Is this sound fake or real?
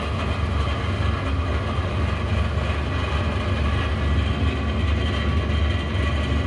real